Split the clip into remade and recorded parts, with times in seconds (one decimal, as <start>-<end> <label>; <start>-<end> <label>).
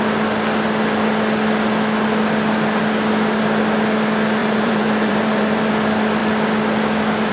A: 0.0-4.4 recorded; 4.4-5.7 remade; 5.7-7.3 recorded